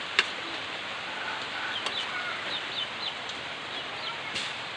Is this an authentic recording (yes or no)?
no